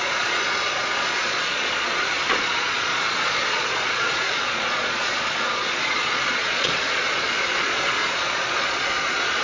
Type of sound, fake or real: fake